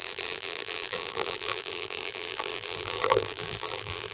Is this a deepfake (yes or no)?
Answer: yes